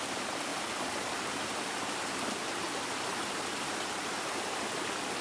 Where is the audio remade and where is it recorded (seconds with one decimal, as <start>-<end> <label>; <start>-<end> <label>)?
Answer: 0.0-5.2 recorded